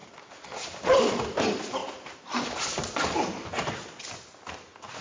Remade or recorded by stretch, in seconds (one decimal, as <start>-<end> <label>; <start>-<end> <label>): 0.0-5.0 recorded